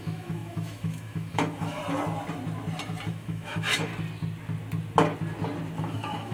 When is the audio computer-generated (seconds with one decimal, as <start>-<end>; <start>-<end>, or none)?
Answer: 0.0-1.8; 3.1-3.9; 5.8-6.3